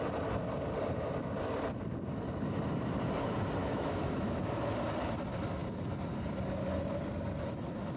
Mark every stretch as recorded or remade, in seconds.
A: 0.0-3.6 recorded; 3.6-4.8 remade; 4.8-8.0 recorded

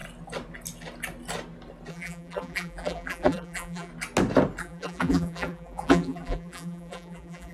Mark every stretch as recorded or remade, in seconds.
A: 0.0-1.9 recorded; 1.9-3.9 remade; 3.9-4.6 recorded; 4.6-7.5 remade